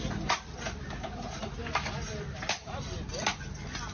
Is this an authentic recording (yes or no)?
yes